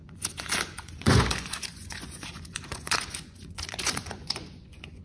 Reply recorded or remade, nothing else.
remade